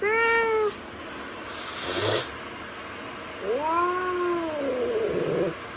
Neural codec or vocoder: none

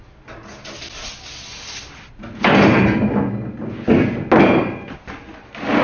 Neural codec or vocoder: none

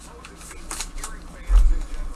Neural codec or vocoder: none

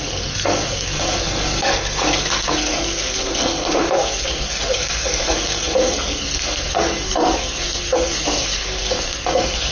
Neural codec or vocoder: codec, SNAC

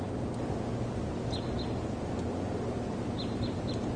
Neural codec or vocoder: none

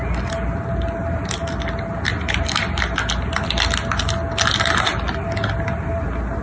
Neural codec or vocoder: none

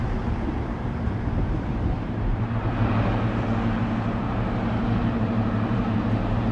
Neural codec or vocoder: vocoder, BigVGAN v2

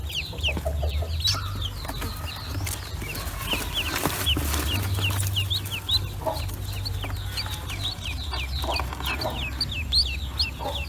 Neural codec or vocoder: none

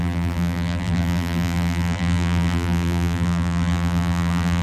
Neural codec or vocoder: vocoder, BigVGAN v2